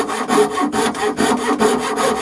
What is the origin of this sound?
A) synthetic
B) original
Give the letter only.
B